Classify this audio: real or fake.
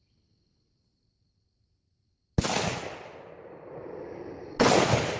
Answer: real